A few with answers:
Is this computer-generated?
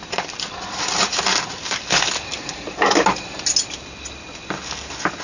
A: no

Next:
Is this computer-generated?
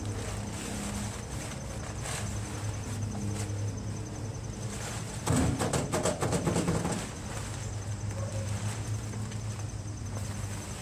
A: no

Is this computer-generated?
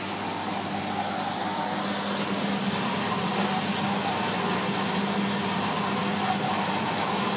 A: no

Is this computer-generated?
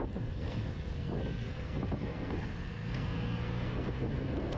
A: yes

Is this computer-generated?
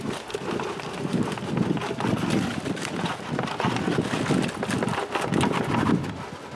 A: no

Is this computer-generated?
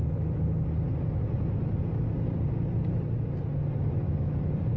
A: no